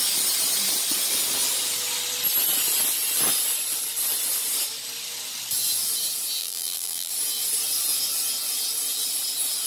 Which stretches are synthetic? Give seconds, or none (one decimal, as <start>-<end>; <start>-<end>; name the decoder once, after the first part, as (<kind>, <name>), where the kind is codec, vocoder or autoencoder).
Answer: 6.4-7.1 (vocoder, BigVGAN v2)